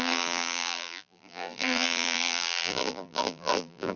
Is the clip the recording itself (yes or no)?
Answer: no